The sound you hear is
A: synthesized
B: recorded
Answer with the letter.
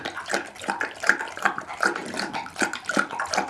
B